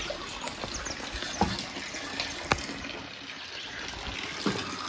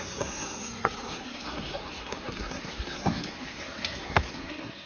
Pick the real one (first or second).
first